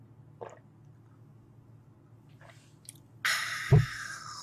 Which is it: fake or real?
real